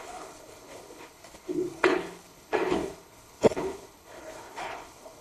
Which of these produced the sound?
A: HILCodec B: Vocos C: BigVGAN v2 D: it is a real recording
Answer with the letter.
A